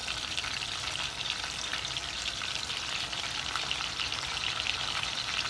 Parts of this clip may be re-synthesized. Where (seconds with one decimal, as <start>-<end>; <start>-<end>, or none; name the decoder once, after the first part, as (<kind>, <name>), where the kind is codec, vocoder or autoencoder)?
none